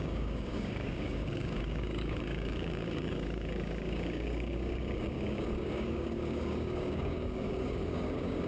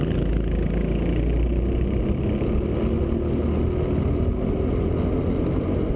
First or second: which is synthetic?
first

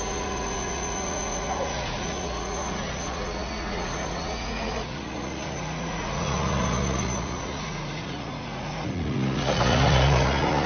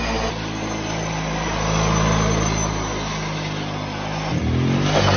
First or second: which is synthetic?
first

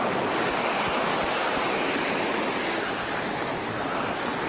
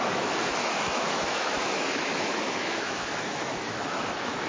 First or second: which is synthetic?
second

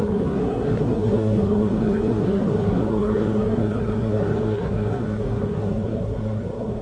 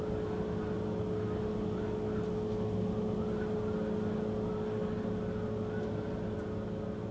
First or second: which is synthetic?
first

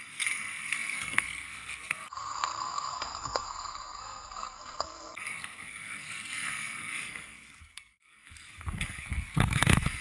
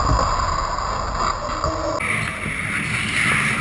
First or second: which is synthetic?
first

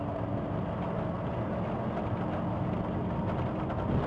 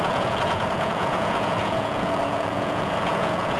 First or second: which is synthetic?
second